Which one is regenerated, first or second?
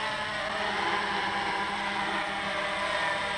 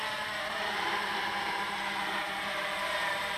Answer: second